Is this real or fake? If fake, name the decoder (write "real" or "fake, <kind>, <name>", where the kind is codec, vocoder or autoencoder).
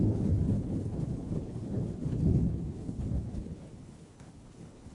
fake, codec, HILCodec